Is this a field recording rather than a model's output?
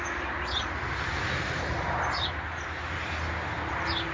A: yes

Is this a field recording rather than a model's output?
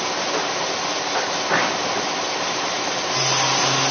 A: yes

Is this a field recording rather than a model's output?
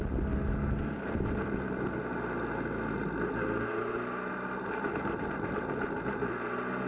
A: yes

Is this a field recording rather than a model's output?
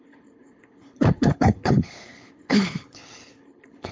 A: no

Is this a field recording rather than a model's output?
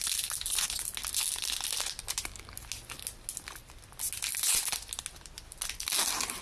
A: yes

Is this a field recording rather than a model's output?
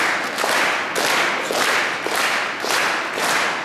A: yes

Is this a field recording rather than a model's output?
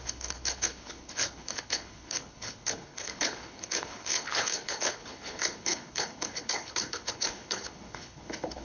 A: no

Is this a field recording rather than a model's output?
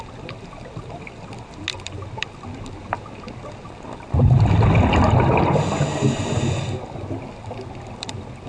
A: yes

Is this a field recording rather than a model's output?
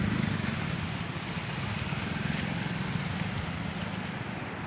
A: yes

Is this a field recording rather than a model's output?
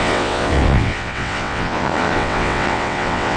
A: no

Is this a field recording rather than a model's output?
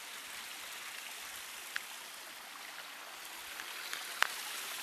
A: yes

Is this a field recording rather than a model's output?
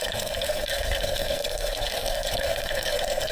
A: no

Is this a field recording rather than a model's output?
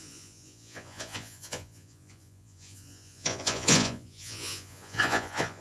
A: no